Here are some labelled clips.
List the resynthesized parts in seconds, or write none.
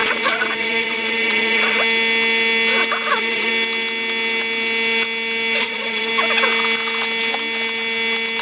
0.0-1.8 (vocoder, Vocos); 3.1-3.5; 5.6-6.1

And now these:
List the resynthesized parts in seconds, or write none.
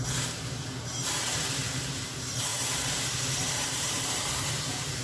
0.0-5.0 (vocoder, BigVGAN v2)